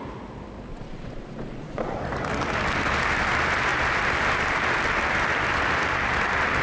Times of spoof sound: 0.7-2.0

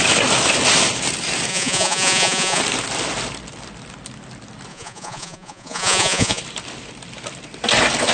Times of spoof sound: 1.5-2.6; 4.7-6.4

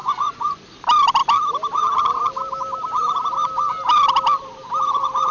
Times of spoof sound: 0.0-0.6

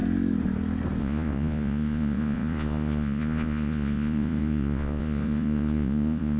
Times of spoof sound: 1.0-6.4

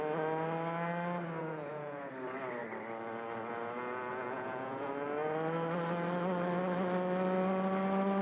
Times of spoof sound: 1.4-2.1; 4.1-4.9

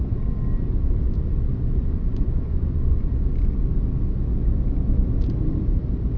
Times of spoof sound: 1.5-3.0